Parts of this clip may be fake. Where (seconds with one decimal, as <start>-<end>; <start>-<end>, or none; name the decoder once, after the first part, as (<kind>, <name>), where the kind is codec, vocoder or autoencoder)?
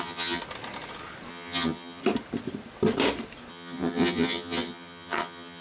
0.0-0.4 (vocoder, HiFi-GAN); 1.3-2.0; 3.5-5.6